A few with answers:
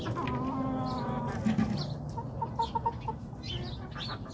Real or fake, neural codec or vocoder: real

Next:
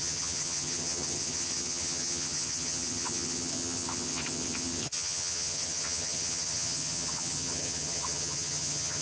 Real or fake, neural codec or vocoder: fake, vocoder, HiFi-GAN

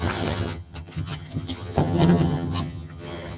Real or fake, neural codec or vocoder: fake, vocoder, HiFi-GAN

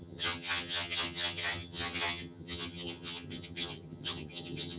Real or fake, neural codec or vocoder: fake, vocoder, HiFi-GAN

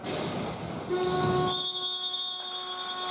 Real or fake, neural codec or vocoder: real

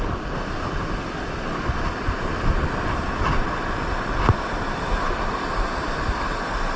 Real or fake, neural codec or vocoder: real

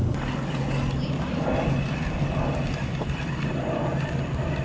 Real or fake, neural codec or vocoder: real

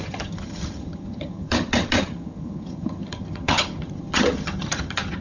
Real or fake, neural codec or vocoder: fake, vocoder, HiFi-GAN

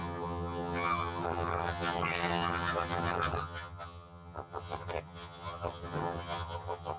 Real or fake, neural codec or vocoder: fake, vocoder, HiFi-GAN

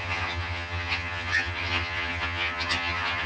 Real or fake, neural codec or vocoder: fake, vocoder, HiFi-GAN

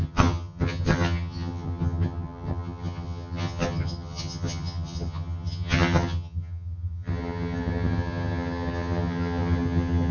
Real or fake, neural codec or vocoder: fake, vocoder, HiFi-GAN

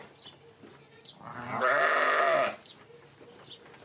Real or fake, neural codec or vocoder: real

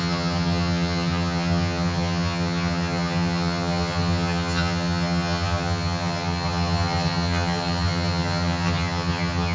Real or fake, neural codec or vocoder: fake, vocoder, HiFi-GAN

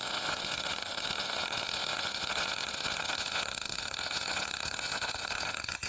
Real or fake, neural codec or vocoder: fake, vocoder, HiFi-GAN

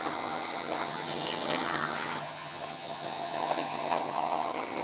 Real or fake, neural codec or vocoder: fake, vocoder, HiFi-GAN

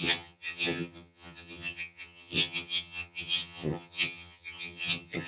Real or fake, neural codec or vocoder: fake, vocoder, HiFi-GAN